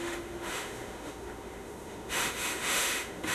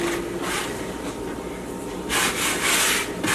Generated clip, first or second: first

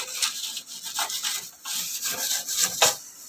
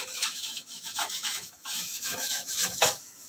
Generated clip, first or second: second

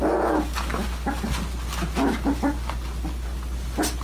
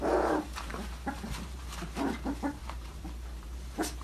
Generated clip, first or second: second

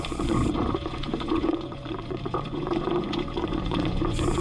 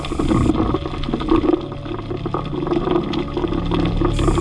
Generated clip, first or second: first